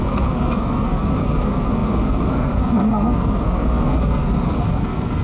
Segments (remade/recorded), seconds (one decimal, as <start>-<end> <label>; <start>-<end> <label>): 0.0-5.2 remade